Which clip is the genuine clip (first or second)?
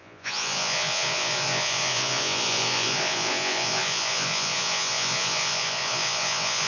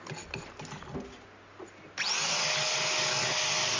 second